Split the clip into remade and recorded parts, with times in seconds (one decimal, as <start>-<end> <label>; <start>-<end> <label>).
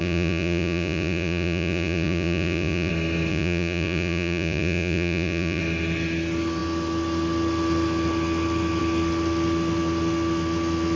0.0-2.9 remade; 2.9-3.3 recorded; 3.3-5.6 remade; 5.6-11.0 recorded